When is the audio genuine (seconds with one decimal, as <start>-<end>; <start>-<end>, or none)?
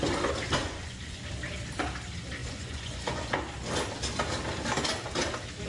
0.0-0.6; 1.2-2.4; 3.4-5.7